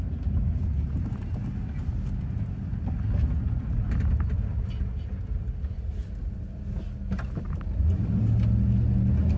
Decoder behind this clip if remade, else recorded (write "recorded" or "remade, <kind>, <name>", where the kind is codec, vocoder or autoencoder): recorded